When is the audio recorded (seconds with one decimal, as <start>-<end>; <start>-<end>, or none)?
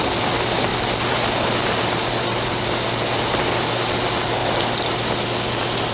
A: 0.0-5.9